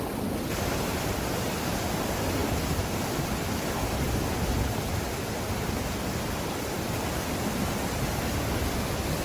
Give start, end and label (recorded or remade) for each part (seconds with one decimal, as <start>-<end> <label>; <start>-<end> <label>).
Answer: 0.0-9.2 recorded